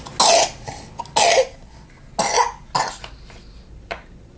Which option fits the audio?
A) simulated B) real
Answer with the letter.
B